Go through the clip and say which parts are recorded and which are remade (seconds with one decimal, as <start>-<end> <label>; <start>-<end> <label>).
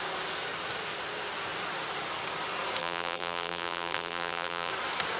0.0-2.8 recorded; 2.8-4.7 remade; 4.7-5.2 recorded